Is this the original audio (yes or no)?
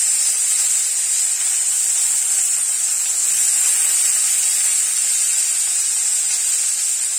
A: yes